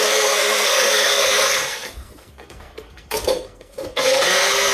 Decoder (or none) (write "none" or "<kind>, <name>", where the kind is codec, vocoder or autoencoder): codec, SNAC